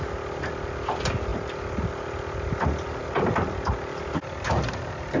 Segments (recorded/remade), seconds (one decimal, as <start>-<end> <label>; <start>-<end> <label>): 0.0-5.2 recorded